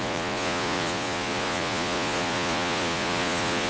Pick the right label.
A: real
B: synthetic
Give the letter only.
B